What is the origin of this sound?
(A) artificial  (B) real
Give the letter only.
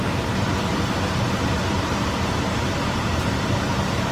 A